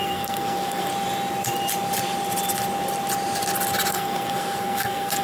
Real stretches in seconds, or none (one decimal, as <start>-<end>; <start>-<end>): 0.9-3.9